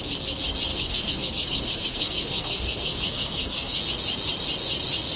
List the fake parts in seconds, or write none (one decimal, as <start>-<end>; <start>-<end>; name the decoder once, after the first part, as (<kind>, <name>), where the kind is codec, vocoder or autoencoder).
0.7-3.8 (codec, SNAC)